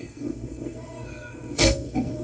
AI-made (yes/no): yes